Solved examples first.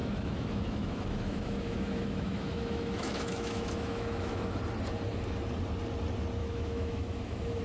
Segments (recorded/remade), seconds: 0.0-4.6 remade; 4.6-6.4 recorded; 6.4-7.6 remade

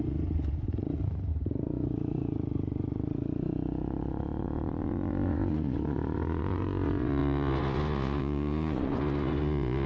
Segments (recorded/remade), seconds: 0.0-9.9 remade

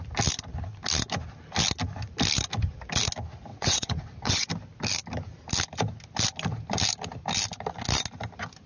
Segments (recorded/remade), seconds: 0.0-3.5 recorded; 3.5-4.5 remade; 4.5-8.7 recorded

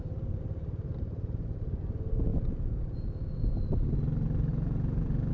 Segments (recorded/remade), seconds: 0.0-2.3 recorded; 2.3-3.5 remade; 3.5-4.5 recorded; 4.5-5.3 remade

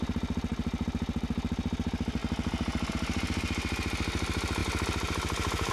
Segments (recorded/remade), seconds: 0.0-4.6 recorded; 4.6-5.7 remade

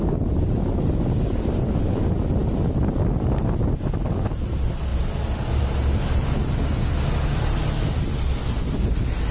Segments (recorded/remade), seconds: 0.0-9.3 recorded

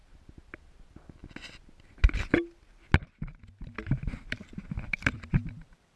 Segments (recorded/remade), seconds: 0.0-3.6 recorded; 3.6-6.0 remade